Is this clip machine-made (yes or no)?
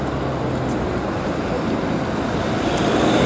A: no